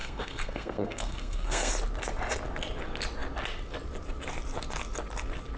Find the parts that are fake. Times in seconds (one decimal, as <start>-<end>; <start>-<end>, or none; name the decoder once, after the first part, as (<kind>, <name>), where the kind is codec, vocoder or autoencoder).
0.0-1.7 (codec, SNAC)